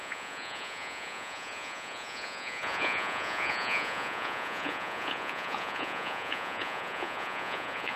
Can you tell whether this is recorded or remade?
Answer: remade